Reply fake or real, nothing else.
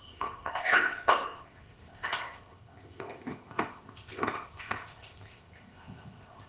fake